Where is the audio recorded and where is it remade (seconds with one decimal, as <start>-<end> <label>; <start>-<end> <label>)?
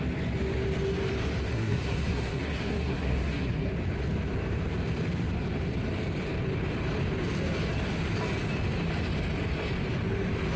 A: 0.0-1.5 recorded; 1.5-3.7 remade; 3.7-10.6 recorded